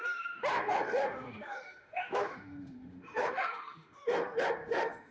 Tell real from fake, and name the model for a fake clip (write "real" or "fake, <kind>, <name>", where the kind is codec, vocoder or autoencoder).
fake, autoencoder, DAC-VAE